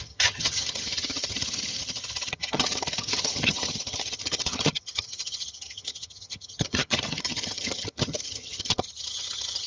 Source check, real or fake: fake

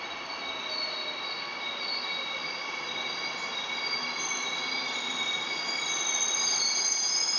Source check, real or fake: real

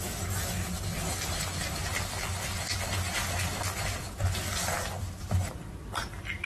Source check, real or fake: real